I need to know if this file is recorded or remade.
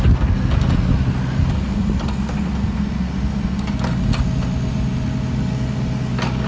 recorded